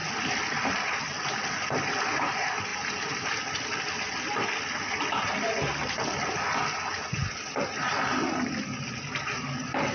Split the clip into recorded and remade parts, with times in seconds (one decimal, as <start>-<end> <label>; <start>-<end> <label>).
0.0-9.9 recorded